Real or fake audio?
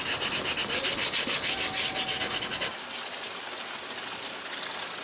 real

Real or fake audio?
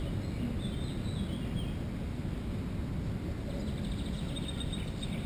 real